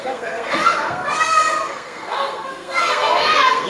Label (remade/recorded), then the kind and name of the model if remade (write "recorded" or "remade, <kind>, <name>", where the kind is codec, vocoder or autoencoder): remade, codec, SNAC